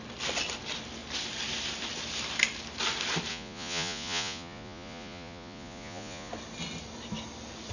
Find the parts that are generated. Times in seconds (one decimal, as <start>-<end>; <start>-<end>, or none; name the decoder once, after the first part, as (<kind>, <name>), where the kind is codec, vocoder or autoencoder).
3.3-6.3 (vocoder, Vocos)